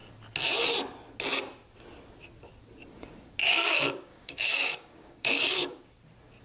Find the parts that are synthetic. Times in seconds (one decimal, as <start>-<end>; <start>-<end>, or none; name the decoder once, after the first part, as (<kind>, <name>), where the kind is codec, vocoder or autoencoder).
3.4-5.9 (codec, DAC)